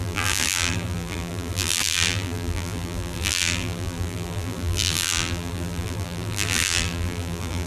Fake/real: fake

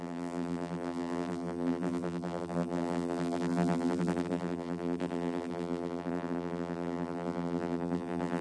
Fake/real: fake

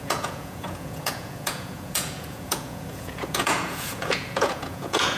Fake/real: fake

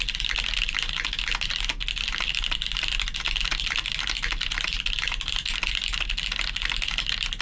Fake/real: real